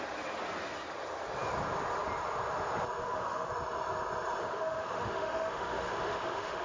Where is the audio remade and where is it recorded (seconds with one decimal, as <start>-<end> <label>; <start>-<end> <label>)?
0.0-3.0 recorded; 3.0-3.5 remade; 3.5-4.4 recorded; 4.4-6.6 remade